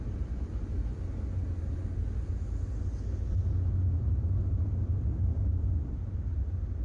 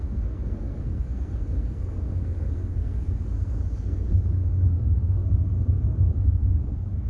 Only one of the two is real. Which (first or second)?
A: first